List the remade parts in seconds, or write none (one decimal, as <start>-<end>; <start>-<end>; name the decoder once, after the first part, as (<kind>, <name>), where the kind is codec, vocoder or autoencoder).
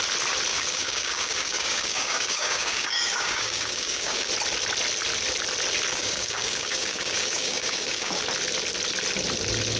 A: 0.5-4.3 (codec, DAC); 5.9-8.2